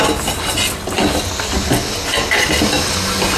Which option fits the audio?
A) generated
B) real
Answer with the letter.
B